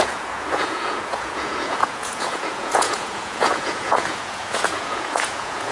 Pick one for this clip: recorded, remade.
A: remade